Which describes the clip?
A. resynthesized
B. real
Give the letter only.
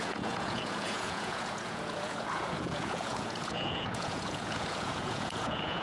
A